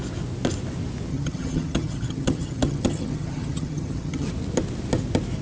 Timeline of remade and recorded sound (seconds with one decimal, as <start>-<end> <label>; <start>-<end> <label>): 0.0-1.1 recorded; 1.1-4.3 remade; 4.3-5.4 recorded